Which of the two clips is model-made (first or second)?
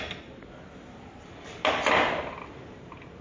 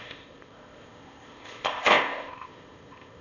second